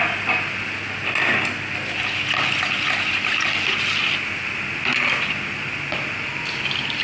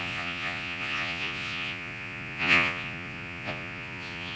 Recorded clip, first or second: first